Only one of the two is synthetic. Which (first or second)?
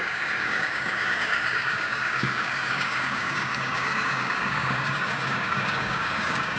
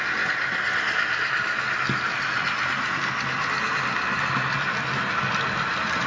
first